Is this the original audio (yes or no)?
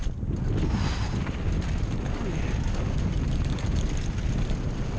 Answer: yes